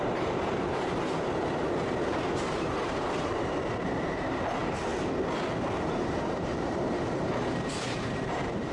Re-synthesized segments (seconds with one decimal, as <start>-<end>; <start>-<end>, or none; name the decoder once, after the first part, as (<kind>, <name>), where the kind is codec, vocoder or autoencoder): 0.0-4.9 (vocoder, BigVGAN v2); 5.8-8.7